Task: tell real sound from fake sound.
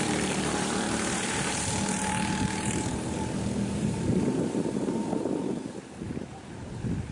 fake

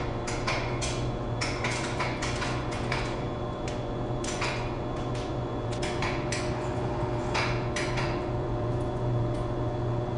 fake